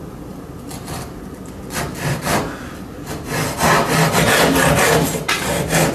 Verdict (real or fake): real